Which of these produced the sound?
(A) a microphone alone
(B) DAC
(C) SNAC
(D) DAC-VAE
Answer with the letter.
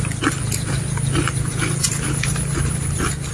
A